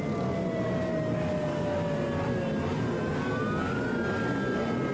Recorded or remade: recorded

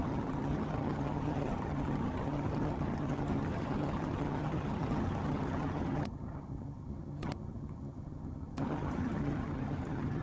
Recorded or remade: remade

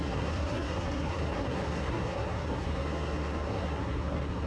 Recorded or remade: remade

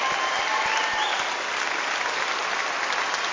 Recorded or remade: recorded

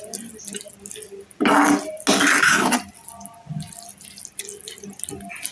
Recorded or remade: recorded